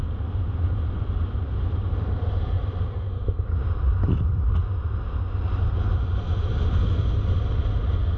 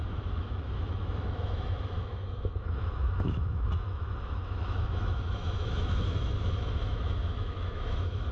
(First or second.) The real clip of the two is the first